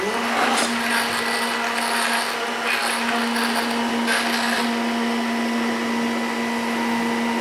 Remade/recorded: recorded